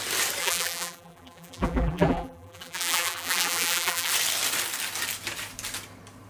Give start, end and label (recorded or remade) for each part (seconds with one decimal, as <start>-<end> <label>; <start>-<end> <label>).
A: 0.0-0.4 recorded; 0.4-4.1 remade; 4.1-6.3 recorded